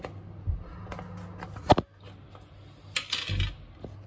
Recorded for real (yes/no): yes